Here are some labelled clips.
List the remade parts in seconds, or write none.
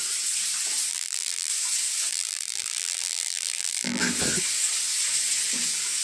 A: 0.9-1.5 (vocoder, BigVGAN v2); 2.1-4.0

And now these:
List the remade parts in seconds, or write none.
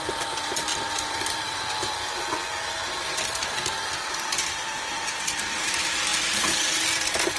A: 0.0-0.7 (vocoder, BigVGAN v2); 1.2-3.4; 4.1-7.4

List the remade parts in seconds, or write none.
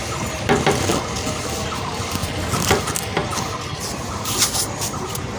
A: 0.9-1.5 (vocoder, BigVGAN v2); 2.2-2.8; 3.2-3.9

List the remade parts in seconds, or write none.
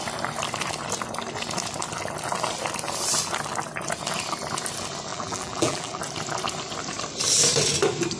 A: 5.1-6.0 (vocoder, BigVGAN v2)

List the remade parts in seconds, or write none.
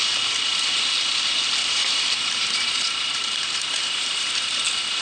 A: 1.6-4.6 (vocoder, BigVGAN v2)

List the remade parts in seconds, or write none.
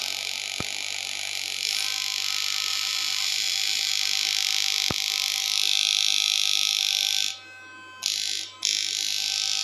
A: 2.7-3.9 (vocoder, BigVGAN v2)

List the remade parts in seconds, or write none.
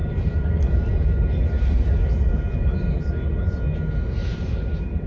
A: 0.0-3.1 (vocoder, BigVGAN v2); 4.2-5.1